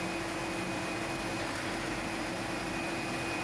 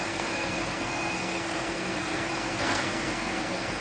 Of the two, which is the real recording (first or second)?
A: first